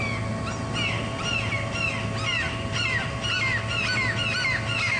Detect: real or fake real